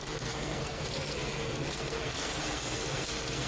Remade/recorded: remade